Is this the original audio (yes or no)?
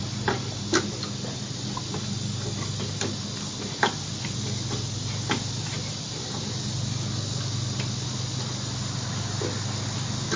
yes